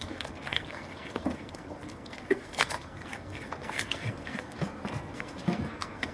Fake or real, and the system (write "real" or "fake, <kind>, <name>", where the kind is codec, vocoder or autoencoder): fake, codec, SNAC